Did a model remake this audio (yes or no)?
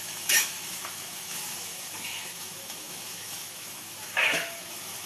yes